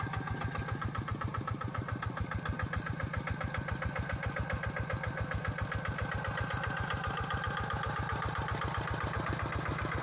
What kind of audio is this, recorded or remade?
recorded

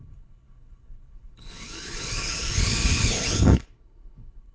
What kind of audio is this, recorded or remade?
remade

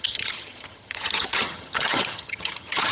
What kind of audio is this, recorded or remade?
remade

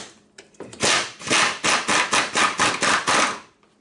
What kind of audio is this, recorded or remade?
recorded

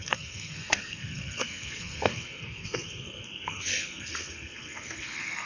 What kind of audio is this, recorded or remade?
remade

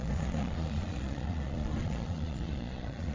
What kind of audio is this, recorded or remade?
remade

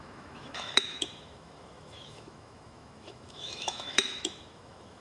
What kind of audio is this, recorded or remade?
remade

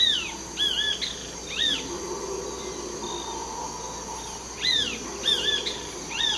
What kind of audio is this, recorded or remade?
recorded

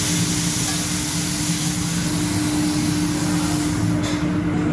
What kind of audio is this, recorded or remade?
recorded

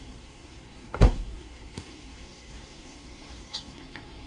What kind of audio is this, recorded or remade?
remade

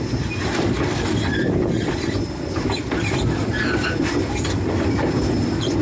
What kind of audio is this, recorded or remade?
remade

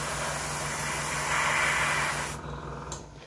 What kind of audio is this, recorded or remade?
recorded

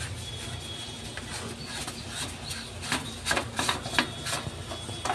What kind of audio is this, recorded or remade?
recorded